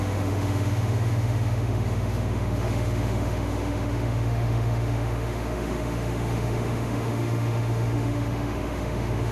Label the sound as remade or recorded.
remade